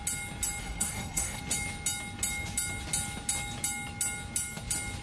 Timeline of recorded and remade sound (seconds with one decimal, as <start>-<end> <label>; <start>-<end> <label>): 0.0-0.6 recorded; 0.6-1.4 remade; 1.4-5.0 recorded